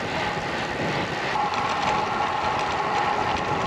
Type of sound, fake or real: real